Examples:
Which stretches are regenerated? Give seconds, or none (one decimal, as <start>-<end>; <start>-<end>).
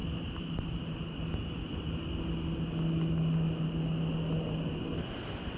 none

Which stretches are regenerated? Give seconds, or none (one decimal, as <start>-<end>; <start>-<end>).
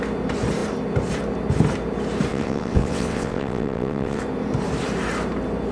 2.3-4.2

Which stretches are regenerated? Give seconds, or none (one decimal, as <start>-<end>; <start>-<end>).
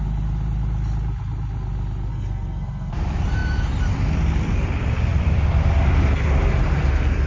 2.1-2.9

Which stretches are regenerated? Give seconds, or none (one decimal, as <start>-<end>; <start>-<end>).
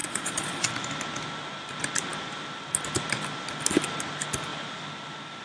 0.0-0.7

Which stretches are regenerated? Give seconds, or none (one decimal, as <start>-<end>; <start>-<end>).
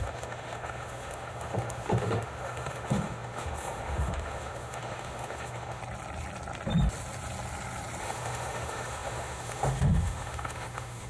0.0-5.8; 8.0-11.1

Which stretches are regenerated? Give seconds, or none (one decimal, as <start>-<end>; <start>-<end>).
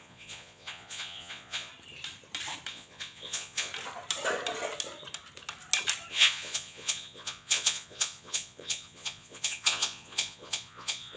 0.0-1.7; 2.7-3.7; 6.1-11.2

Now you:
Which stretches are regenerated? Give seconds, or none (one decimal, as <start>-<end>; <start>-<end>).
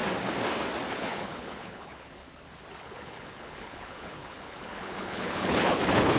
0.9-2.2; 2.8-6.2